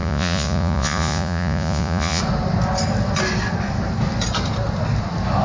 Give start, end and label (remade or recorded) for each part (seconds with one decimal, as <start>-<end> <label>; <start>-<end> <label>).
0.0-2.2 remade; 2.2-5.4 recorded